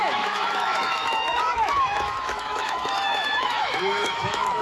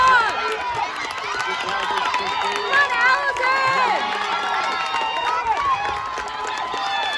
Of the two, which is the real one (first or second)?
second